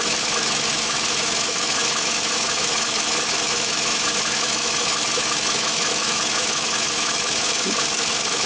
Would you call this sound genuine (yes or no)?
no